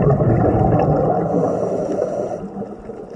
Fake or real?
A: real